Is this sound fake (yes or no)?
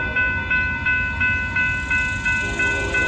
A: no